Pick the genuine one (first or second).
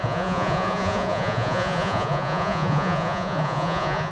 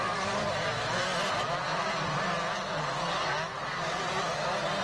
second